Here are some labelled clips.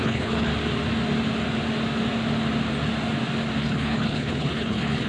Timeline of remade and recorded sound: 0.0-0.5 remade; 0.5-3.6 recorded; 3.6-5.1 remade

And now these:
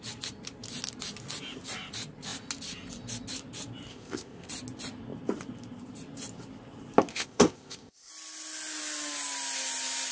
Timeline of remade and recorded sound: 0.0-3.9 recorded; 3.9-4.5 remade; 4.5-7.1 recorded; 7.1-8.1 remade; 8.1-10.1 recorded

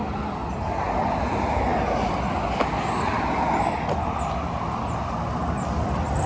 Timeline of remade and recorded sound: 0.0-6.3 recorded